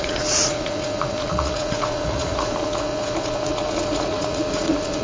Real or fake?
fake